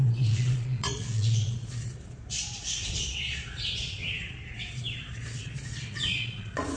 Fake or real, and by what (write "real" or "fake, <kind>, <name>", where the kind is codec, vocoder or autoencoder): fake, vocoder, Vocos